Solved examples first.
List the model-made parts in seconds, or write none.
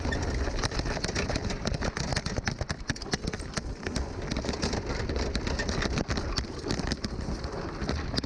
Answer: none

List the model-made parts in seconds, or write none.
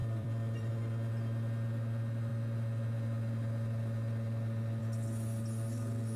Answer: 0.0-0.7 (vocoder, BigVGAN v2)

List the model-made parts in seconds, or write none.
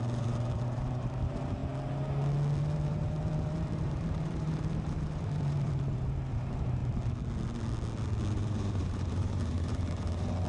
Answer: 0.0-1.6 (vocoder, BigVGAN v2); 2.6-6.8; 8.2-10.5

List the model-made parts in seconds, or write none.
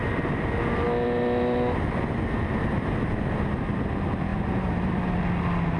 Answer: 0.0-0.5 (vocoder, BigVGAN v2); 4.3-5.2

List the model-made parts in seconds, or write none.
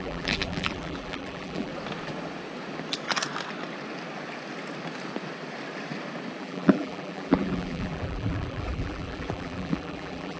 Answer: 0.0-1.7 (vocoder, BigVGAN v2); 6.4-10.4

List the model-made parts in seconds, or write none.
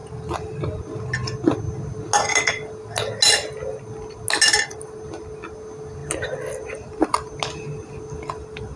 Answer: none